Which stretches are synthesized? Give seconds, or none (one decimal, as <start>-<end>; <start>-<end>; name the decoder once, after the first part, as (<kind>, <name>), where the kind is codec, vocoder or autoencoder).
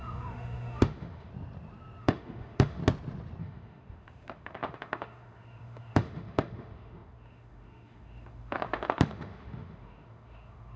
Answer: 0.0-1.3 (autoencoder, DAC-VAE); 2.0-2.8; 3.4-10.8